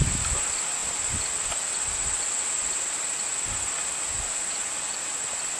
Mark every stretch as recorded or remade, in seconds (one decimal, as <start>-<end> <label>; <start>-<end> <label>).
0.0-5.6 recorded